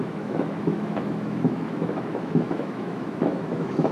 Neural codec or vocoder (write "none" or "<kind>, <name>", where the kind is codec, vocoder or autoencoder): autoencoder, DAC-VAE